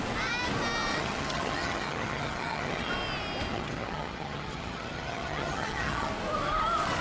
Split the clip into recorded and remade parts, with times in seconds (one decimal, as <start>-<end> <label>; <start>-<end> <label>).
0.0-0.9 recorded; 0.9-2.9 remade; 2.9-3.5 recorded; 3.5-6.1 remade; 6.1-7.0 recorded